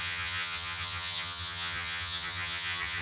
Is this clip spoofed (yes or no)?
yes